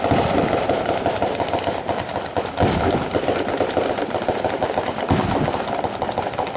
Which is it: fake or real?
real